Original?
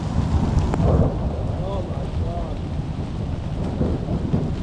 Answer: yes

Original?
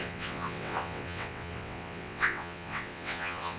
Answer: no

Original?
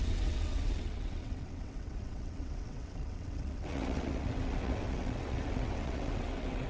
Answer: no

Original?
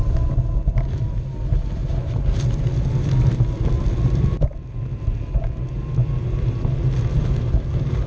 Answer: yes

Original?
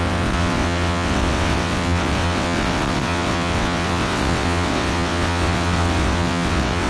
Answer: no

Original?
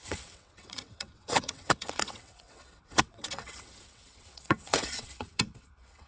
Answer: no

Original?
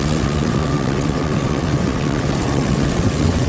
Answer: no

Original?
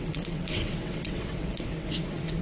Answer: no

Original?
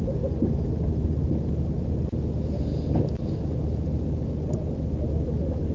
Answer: yes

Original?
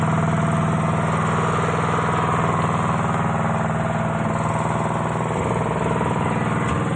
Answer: yes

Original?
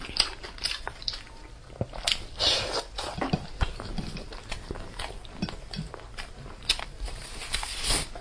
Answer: yes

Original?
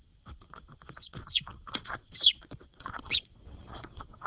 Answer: no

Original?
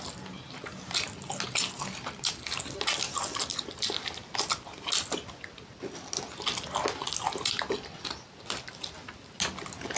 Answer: yes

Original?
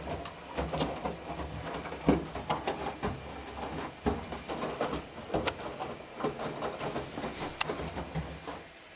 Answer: yes